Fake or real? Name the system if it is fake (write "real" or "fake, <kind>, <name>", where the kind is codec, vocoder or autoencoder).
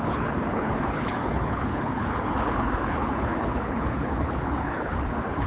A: fake, codec, HILCodec